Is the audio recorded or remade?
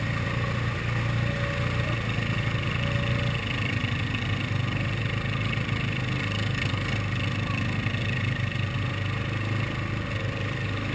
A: recorded